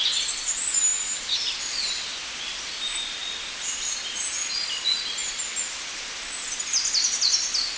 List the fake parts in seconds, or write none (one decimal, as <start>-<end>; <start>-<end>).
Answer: none